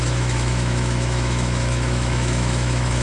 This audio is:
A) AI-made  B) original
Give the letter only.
A